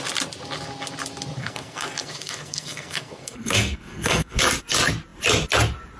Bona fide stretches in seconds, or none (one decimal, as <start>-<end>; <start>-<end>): 0.0-1.4; 4.4-6.0